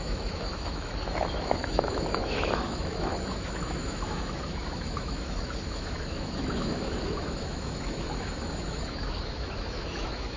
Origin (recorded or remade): remade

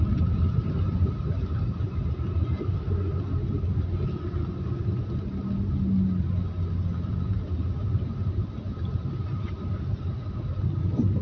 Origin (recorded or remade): recorded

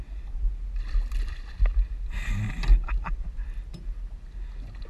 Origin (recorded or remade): recorded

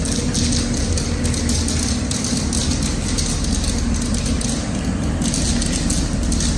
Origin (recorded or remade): recorded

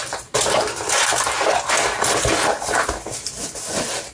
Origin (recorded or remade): recorded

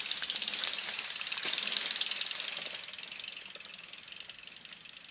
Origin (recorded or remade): recorded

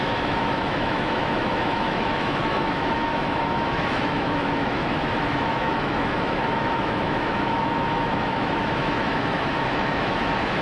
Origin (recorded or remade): remade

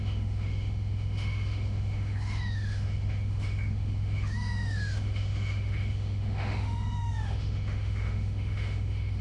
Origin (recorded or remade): remade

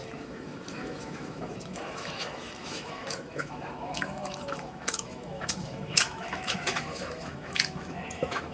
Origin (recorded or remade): remade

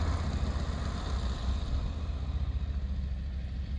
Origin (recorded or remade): recorded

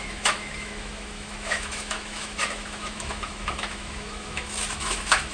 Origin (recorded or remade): remade